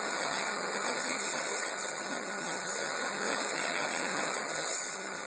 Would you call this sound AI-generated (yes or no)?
yes